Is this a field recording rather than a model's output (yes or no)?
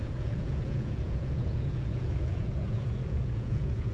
no